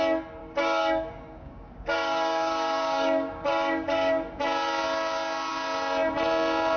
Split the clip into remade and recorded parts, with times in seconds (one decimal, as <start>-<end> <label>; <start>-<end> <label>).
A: 0.0-0.4 recorded; 0.4-4.3 remade; 4.3-6.8 recorded